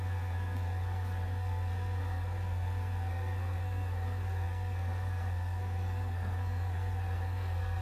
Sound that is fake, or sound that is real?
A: fake